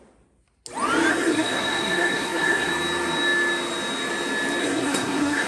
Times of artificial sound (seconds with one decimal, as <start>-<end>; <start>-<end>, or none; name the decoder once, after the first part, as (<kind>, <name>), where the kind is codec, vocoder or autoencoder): 1.1-2.7 (codec, SNAC); 4.6-5.5